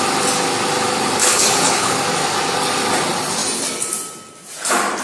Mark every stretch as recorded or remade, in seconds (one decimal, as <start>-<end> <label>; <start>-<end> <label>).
0.0-1.2 recorded; 1.2-2.0 remade; 2.0-5.0 recorded